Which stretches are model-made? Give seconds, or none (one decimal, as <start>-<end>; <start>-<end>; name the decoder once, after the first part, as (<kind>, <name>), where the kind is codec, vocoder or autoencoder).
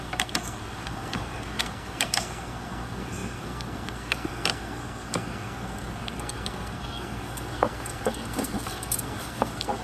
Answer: 0.0-9.8 (codec, SNAC)